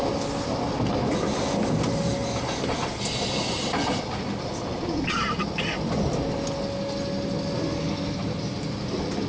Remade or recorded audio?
recorded